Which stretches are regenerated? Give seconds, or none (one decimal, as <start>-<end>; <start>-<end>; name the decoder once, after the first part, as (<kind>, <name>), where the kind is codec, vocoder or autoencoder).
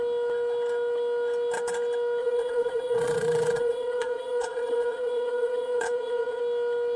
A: 2.2-6.4 (vocoder, Vocos)